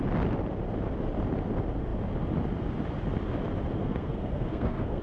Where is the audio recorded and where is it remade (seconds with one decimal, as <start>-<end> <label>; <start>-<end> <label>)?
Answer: 0.0-3.8 recorded; 3.8-5.0 remade